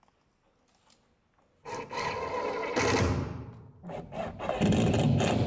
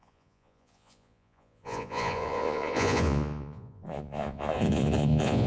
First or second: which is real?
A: first